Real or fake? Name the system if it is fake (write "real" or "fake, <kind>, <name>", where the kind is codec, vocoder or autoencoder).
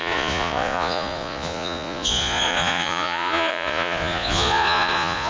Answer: fake, vocoder, Vocos